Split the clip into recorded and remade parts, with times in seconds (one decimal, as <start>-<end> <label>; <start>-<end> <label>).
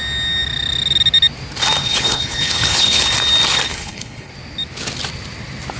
0.0-1.8 recorded; 1.8-3.0 remade; 3.0-3.7 recorded; 3.7-4.3 remade; 4.3-5.8 recorded